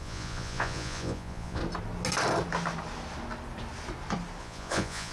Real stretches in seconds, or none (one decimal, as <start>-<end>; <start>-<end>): 1.6-4.4